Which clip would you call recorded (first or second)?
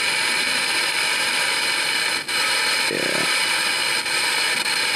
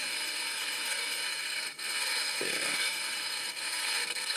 first